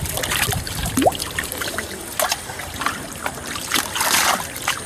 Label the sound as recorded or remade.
recorded